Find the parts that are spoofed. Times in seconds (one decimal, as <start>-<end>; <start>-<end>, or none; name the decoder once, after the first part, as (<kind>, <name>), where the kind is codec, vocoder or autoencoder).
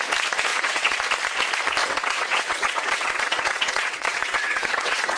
0.5-1.0 (vocoder, WaveNeXt); 1.8-5.2